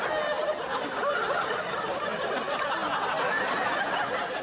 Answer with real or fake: real